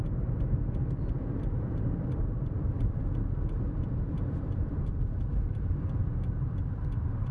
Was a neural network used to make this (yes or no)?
yes